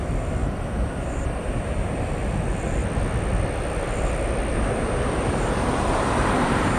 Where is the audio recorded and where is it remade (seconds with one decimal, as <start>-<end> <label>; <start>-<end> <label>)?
0.0-0.4 recorded; 0.4-2.1 remade; 2.1-4.5 recorded; 4.5-6.8 remade